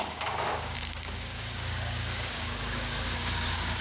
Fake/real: fake